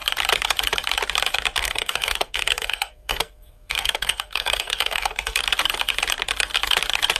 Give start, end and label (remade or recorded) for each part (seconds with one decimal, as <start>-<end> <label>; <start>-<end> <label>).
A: 0.0-1.6 recorded; 1.6-5.4 remade; 5.4-7.2 recorded